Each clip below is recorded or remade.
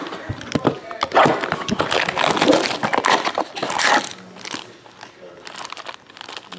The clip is recorded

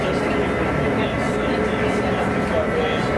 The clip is recorded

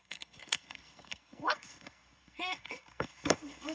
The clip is remade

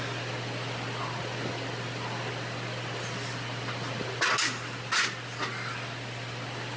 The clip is recorded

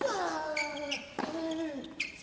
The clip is recorded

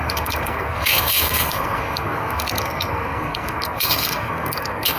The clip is remade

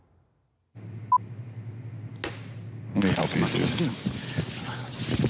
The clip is recorded